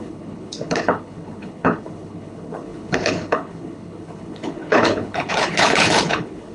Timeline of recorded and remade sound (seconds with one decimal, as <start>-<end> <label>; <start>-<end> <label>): 0.0-6.5 remade